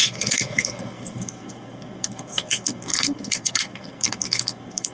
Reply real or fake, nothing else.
fake